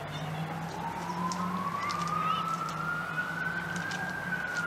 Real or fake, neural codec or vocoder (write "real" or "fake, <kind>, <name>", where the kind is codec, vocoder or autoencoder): real